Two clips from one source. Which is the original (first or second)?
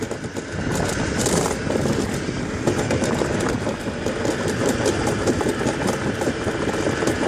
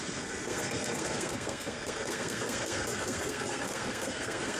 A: first